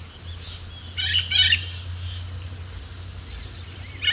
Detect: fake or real real